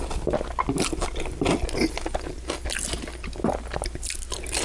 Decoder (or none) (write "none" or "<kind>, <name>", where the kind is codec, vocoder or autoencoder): none